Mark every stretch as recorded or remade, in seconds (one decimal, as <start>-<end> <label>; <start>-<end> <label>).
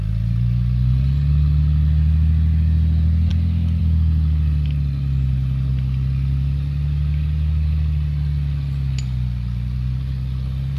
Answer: 0.0-10.8 recorded